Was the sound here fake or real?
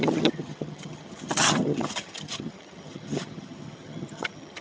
fake